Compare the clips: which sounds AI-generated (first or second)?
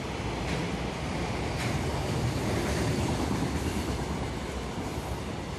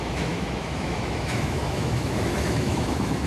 second